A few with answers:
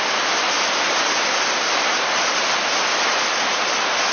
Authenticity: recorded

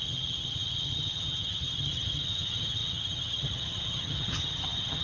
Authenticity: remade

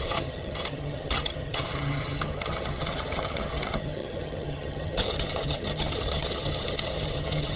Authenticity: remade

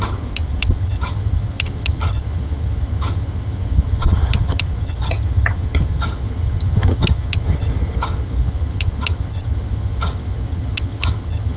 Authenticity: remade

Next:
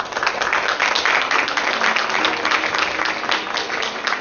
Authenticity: recorded